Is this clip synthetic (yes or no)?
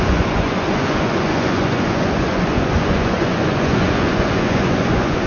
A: yes